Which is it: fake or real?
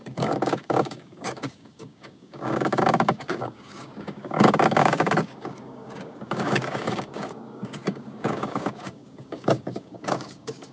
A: fake